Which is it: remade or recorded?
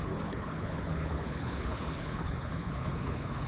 remade